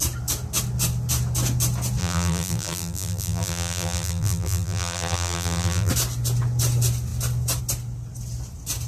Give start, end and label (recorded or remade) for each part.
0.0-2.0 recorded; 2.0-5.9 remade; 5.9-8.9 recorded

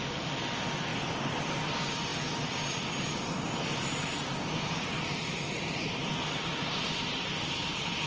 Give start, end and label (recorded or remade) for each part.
0.0-8.1 recorded

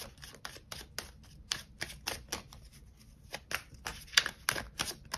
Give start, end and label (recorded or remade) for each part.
0.0-3.9 recorded; 3.9-4.4 remade; 4.4-5.2 recorded

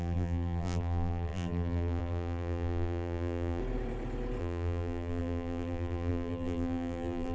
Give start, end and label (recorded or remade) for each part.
0.0-3.6 remade; 3.6-4.4 recorded; 4.4-7.3 remade